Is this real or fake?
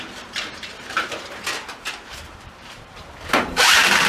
fake